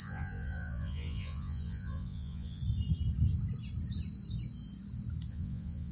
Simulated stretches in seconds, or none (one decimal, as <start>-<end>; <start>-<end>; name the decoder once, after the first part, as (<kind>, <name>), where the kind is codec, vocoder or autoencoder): 0.0-2.6 (vocoder, Vocos); 5.3-5.9